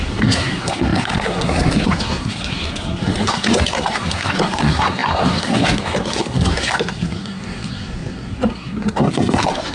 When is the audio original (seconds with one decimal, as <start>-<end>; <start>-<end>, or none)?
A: none